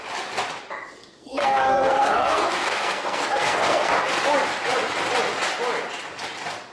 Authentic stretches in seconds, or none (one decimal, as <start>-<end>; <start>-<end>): 0.0-1.1; 3.9-6.7